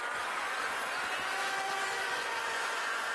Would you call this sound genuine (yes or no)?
no